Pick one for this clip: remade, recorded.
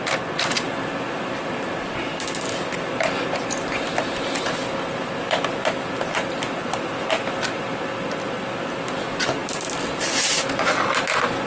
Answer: recorded